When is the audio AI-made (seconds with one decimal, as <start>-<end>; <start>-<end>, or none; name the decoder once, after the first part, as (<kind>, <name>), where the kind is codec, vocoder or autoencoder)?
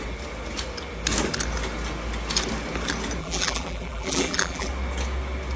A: 3.2-4.7 (vocoder, BigVGAN v2)